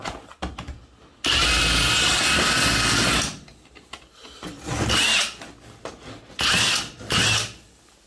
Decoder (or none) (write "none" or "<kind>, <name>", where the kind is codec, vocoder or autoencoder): none